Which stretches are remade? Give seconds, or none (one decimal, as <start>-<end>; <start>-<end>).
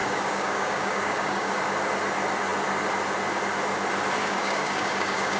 0.0-1.6; 4.2-5.4